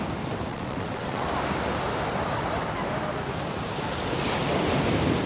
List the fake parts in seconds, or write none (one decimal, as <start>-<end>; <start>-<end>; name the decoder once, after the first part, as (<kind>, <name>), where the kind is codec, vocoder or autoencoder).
0.5-1.3 (vocoder, WaveNeXt)